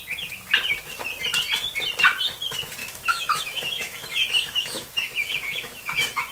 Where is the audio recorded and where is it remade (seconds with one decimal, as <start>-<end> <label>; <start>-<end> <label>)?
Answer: 0.0-2.8 recorded; 2.8-6.3 remade